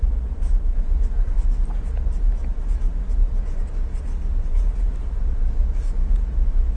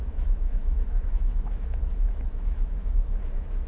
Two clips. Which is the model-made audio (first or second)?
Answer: second